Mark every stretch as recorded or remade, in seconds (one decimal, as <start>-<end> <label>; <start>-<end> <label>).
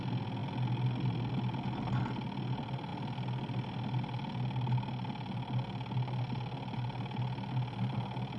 0.0-8.4 recorded